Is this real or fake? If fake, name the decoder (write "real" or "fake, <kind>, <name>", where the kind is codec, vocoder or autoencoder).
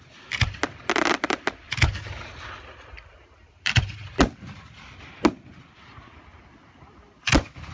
real